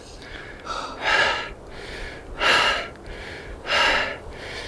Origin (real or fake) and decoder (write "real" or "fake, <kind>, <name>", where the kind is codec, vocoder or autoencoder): real